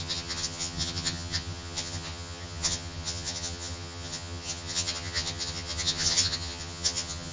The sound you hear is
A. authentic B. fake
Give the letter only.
B